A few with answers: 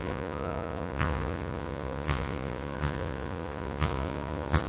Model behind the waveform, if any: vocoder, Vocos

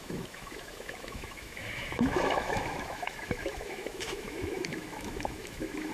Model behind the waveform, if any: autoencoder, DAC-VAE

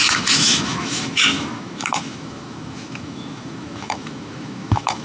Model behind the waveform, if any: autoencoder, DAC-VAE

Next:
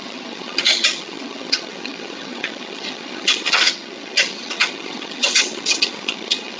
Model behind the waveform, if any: vocoder, HiFi-GAN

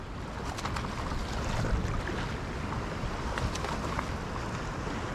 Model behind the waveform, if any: none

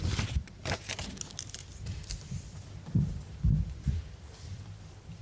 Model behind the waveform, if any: vocoder, BigVGAN v2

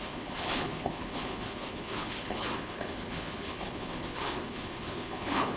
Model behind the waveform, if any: codec, HILCodec